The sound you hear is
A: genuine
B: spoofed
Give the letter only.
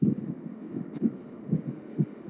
B